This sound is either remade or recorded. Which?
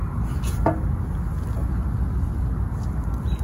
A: recorded